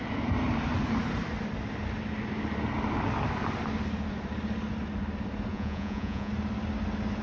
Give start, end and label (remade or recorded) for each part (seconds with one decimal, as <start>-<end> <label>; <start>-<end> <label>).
0.0-5.5 recorded; 5.5-6.3 remade; 6.3-7.2 recorded